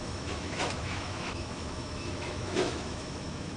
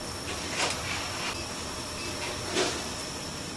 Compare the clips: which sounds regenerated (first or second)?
first